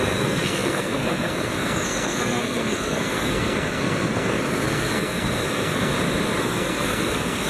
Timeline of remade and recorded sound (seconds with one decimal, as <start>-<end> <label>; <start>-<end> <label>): 0.0-5.9 remade; 5.9-6.4 recorded; 6.4-7.5 remade